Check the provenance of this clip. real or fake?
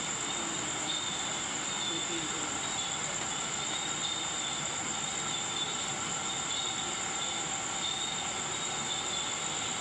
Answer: real